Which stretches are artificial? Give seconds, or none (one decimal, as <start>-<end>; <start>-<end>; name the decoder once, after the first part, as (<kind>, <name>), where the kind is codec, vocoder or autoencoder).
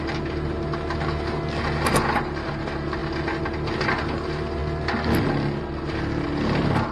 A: none